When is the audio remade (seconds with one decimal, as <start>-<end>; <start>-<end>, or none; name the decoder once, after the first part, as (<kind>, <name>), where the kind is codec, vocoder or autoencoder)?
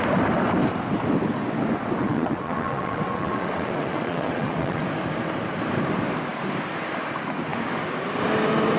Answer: 2.0-4.8 (vocoder, WaveNeXt)